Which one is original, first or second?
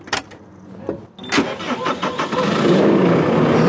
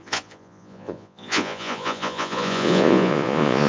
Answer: first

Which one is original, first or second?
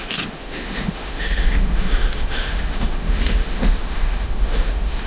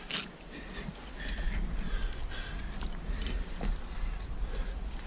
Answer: second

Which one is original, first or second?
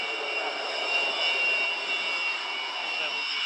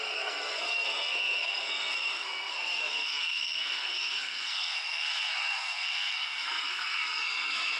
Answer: first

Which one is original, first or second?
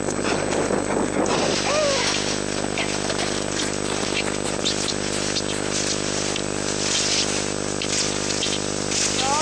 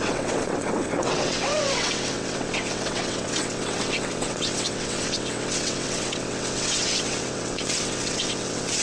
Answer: first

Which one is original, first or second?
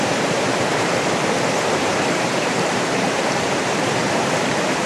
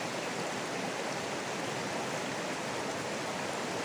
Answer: second